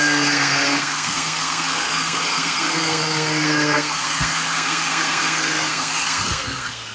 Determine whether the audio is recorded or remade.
remade